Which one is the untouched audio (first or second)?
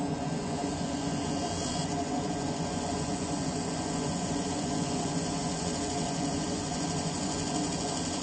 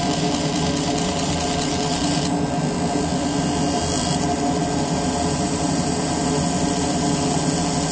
second